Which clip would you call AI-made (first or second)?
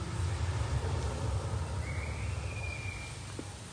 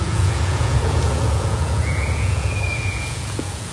second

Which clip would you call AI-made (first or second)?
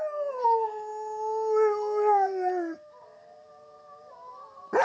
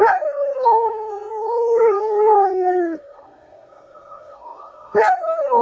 second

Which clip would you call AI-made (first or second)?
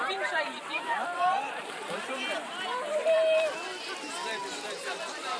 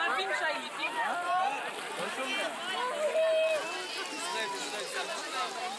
first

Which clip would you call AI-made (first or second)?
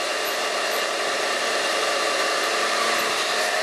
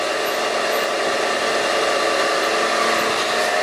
first